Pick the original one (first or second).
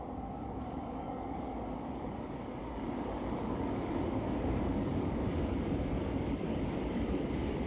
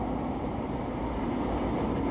second